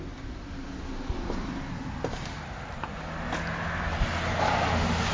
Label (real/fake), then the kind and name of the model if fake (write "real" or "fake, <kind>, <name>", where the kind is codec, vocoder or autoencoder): real